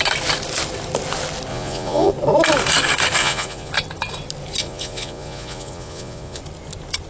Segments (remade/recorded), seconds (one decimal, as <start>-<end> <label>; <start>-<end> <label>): 0.0-1.5 recorded; 1.5-2.1 remade; 2.1-3.2 recorded; 3.2-3.7 remade; 3.7-4.6 recorded; 4.6-6.4 remade; 6.4-7.1 recorded